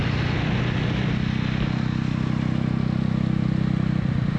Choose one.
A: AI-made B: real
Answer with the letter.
B